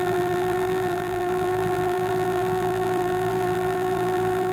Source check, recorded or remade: remade